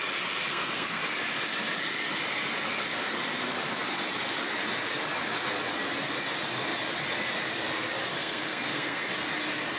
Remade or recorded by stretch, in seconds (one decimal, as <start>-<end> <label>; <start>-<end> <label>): 0.0-0.5 recorded; 0.5-1.0 remade; 1.0-8.1 recorded; 8.1-9.1 remade; 9.1-9.8 recorded